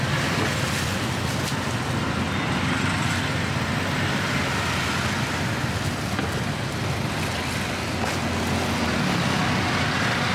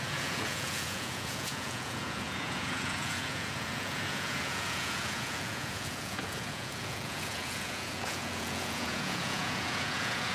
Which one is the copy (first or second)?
second